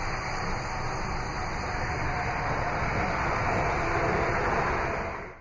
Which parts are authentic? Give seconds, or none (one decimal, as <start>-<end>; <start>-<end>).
0.0-5.4